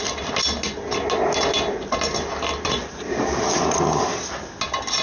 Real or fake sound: real